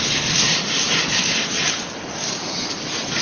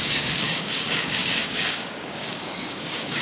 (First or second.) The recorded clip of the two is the first